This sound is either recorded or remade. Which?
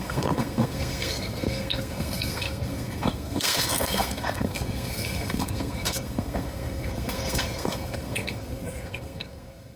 remade